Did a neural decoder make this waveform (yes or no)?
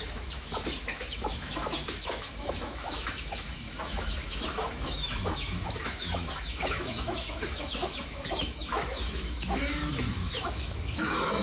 yes